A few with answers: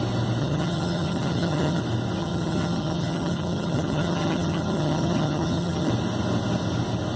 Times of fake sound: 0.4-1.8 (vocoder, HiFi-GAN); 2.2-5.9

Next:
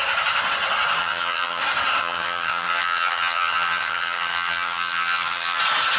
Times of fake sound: 1.0-1.6 (vocoder, HiFi-GAN); 2.0-5.6